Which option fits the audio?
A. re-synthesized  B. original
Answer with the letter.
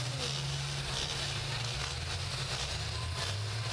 B